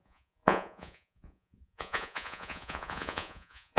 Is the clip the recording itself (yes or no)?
no